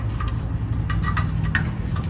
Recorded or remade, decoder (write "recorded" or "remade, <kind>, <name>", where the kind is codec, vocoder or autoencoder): recorded